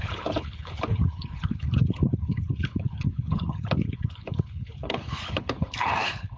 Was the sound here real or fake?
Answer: fake